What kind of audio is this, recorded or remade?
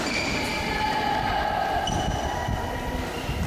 recorded